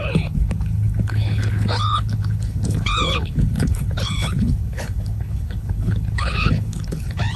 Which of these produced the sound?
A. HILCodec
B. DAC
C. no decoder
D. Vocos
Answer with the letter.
A